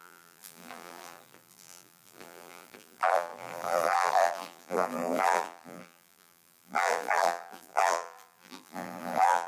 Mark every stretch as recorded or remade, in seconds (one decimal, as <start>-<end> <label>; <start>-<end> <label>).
0.0-9.5 remade